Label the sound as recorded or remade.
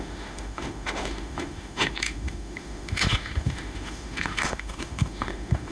remade